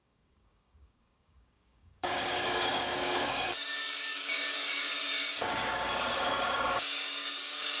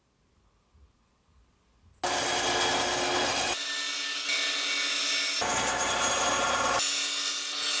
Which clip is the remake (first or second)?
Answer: first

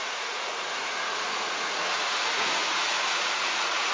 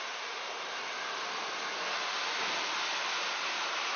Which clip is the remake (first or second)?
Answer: first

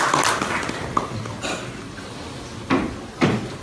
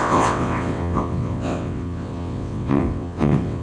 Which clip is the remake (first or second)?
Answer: second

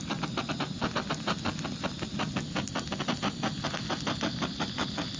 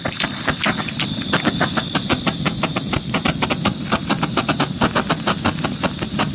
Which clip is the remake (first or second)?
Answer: second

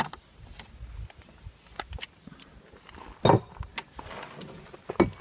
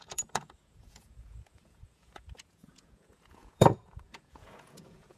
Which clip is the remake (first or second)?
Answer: second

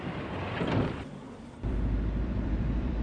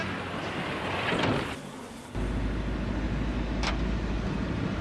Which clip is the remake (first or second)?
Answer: first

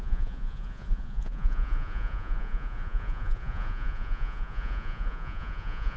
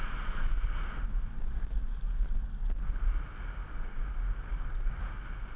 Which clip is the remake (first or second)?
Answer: first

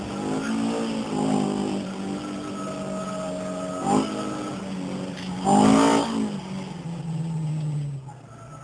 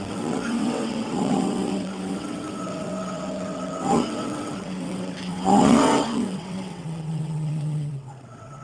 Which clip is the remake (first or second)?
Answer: second